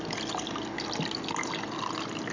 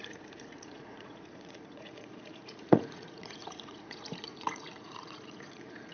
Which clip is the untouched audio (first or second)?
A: first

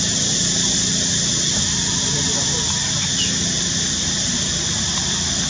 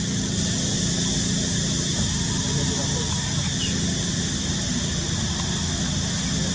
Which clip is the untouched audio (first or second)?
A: second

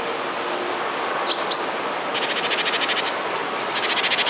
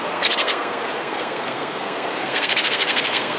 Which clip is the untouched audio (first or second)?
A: first